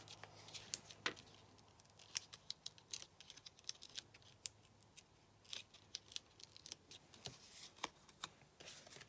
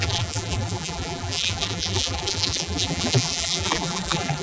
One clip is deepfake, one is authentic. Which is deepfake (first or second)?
second